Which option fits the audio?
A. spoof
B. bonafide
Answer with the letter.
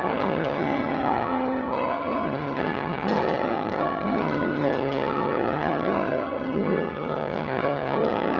A